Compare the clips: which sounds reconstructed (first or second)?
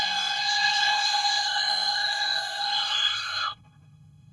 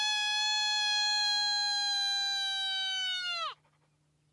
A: first